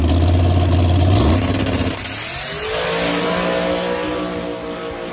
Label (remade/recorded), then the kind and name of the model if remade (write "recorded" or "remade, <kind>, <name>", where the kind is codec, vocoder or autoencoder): recorded